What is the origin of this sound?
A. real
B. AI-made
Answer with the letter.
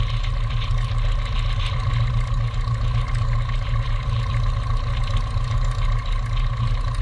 A